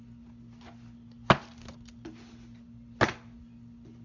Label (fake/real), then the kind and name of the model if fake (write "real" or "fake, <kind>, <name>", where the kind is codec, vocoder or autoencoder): real